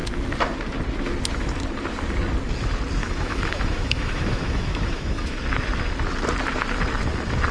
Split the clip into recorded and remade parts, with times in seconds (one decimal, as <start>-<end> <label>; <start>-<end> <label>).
0.0-3.0 recorded; 3.0-5.4 remade; 5.4-7.5 recorded